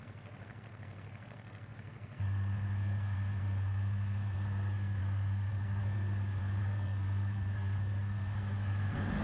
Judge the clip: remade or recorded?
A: remade